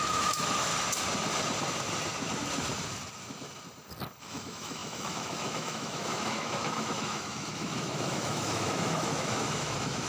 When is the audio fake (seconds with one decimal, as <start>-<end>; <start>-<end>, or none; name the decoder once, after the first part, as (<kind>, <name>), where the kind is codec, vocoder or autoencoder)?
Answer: 0.0-0.7 (autoencoder, DAC-VAE); 4.2-10.1

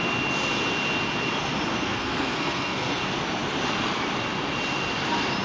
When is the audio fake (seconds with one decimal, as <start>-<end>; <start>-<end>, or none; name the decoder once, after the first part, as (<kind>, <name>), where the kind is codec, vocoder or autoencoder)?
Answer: 1.7-3.0 (codec, SNAC)

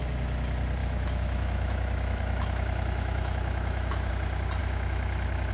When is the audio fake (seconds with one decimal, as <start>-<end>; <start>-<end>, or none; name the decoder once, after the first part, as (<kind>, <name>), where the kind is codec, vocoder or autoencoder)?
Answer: 0.8-4.1 (autoencoder, DAC-VAE); 4.6-5.5